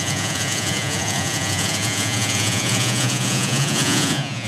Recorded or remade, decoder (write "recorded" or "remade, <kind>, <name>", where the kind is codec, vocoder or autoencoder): remade, vocoder, Vocos